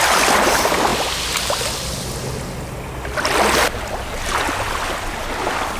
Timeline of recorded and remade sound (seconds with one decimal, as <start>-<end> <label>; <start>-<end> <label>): 0.0-5.8 recorded